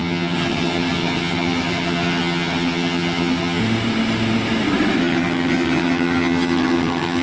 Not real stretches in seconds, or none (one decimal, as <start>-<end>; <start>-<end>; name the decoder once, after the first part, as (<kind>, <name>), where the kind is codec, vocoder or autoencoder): 0.0-3.6 (vocoder, HiFi-GAN); 5.0-7.2